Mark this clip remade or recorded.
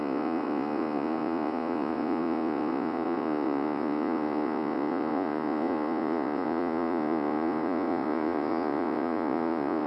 remade